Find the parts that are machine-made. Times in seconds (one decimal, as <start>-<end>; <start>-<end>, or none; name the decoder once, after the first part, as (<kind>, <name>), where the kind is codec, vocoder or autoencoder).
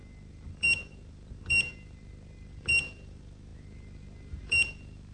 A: 0.0-5.1 (vocoder, BigVGAN v2)